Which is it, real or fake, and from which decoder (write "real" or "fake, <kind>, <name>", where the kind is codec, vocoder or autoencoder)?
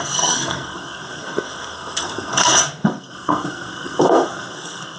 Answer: fake, codec, SNAC